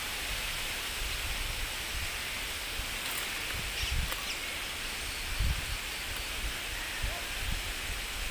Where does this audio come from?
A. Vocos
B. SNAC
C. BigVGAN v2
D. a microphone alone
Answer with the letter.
D